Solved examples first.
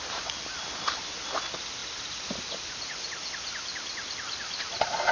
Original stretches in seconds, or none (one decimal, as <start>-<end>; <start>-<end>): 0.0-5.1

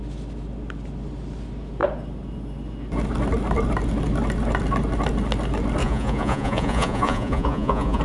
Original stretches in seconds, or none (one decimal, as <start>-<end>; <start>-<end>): 0.0-5.8

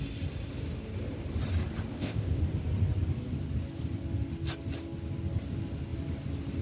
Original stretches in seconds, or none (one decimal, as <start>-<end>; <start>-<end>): 0.0-1.9; 2.4-6.6

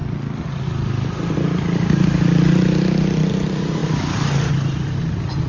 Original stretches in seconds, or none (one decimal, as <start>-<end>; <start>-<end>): 0.0-5.5

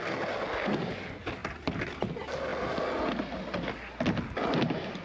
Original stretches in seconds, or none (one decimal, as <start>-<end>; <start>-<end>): 0.0-5.0

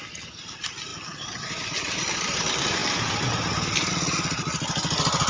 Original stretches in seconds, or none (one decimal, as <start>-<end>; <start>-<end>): 0.0-5.3